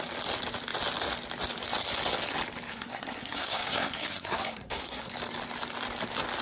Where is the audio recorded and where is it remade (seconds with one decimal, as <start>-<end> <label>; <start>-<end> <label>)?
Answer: 0.0-2.7 recorded; 2.7-5.1 remade; 5.1-6.4 recorded